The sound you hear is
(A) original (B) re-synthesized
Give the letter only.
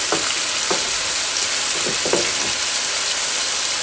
A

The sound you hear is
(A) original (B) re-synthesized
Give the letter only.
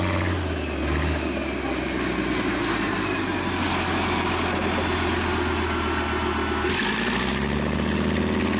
A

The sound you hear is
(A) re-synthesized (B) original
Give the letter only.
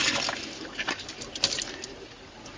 B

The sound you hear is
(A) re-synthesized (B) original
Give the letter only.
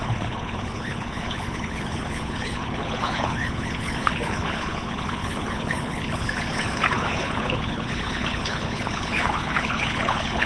A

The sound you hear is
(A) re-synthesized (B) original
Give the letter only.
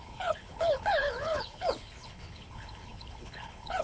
A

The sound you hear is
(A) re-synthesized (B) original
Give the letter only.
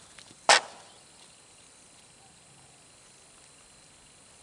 B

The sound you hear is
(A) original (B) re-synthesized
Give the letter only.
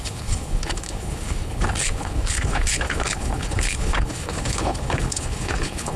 B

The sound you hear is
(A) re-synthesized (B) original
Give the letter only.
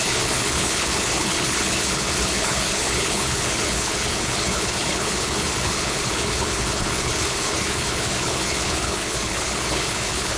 A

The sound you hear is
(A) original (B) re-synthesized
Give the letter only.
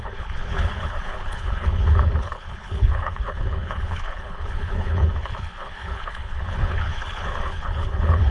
B